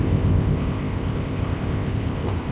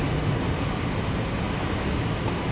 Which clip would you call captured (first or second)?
second